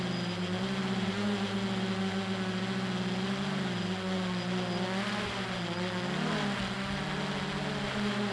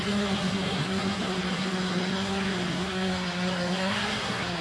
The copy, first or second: second